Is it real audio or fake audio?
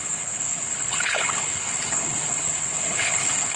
fake